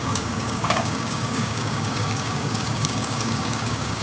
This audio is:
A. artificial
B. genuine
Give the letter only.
A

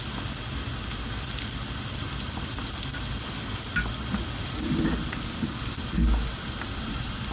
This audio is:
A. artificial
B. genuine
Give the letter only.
B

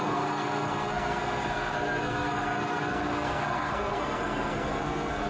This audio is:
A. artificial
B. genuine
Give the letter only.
A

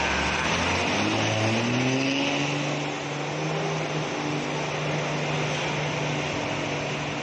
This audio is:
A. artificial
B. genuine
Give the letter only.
B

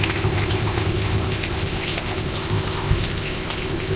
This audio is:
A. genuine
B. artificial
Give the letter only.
B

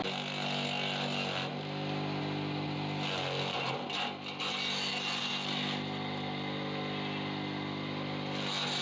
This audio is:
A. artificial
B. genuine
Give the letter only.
B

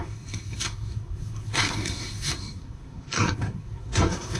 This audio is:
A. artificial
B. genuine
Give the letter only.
A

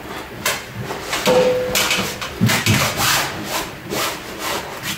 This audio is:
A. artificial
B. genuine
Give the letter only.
B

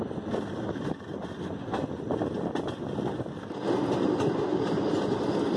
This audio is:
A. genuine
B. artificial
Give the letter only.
A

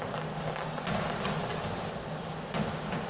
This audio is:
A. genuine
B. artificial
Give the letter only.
A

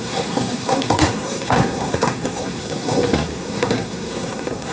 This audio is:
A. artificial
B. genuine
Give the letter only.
A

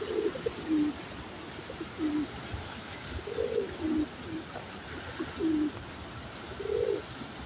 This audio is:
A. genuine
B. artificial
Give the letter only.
A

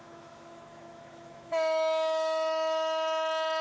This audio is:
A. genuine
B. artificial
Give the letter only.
B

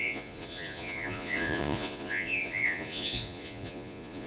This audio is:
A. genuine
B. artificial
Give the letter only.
B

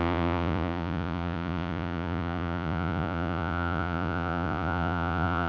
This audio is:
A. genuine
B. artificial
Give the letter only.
B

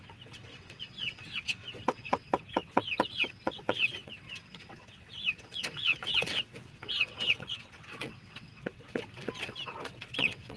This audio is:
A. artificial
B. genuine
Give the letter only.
A